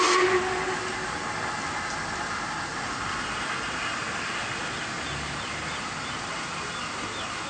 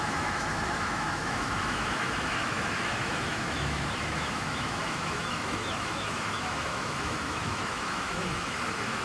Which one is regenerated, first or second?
second